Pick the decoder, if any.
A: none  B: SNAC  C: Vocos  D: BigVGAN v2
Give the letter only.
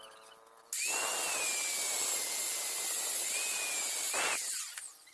A